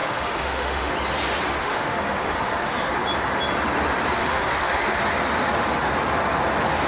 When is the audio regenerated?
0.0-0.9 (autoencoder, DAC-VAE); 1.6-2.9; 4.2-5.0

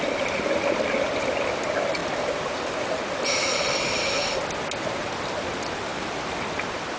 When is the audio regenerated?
2.0-3.6 (vocoder, BigVGAN v2); 5.9-7.0